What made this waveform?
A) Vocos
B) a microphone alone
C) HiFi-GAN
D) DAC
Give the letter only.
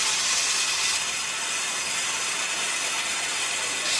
B